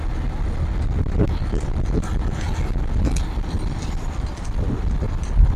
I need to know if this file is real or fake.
real